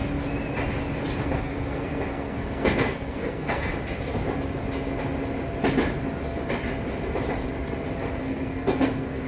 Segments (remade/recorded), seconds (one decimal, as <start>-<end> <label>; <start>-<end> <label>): 0.0-1.2 recorded; 1.2-3.7 remade; 3.7-8.2 recorded; 8.2-9.3 remade

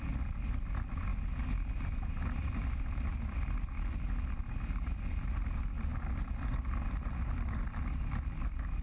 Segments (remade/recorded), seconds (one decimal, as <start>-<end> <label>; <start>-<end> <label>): 0.0-8.8 recorded

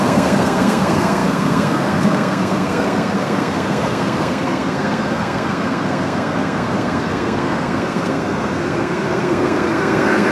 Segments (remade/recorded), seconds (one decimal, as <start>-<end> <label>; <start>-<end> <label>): 0.0-10.3 remade

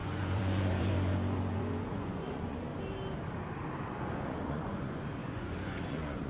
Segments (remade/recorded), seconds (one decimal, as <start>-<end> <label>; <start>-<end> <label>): 0.0-2.7 remade; 2.7-3.9 recorded; 3.9-6.3 remade

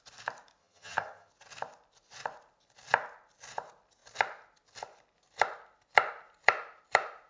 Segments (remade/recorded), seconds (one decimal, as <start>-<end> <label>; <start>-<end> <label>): 0.0-0.6 recorded; 0.6-1.3 remade; 1.3-7.3 recorded